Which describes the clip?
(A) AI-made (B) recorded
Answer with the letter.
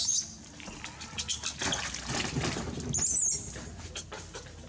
B